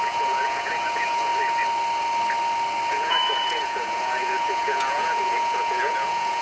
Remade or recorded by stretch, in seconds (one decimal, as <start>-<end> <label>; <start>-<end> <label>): 0.0-1.3 remade; 1.3-2.9 recorded; 2.9-6.4 remade

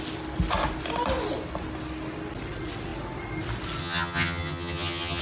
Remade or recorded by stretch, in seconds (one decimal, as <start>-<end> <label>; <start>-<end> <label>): 0.0-3.8 recorded; 3.8-5.2 remade